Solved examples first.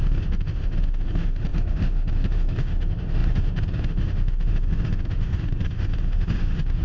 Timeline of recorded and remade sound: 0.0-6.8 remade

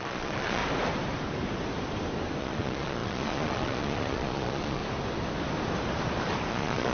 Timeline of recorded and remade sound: 0.0-0.6 remade; 0.6-2.4 recorded; 2.4-4.8 remade; 4.8-6.5 recorded; 6.5-6.9 remade

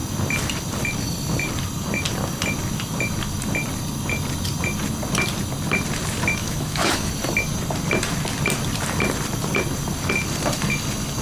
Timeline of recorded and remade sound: 0.0-6.4 recorded; 6.4-7.1 remade; 7.1-11.2 recorded